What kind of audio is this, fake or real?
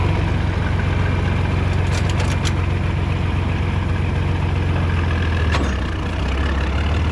real